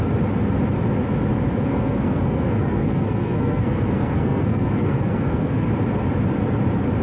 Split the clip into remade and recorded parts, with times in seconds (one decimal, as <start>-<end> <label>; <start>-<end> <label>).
0.0-1.7 recorded; 1.7-5.7 remade; 5.7-7.0 recorded